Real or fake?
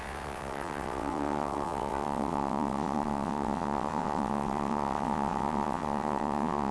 fake